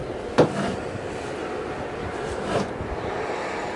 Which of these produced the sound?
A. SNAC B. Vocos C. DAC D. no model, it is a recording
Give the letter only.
D